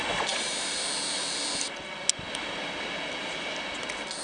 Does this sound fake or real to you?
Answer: real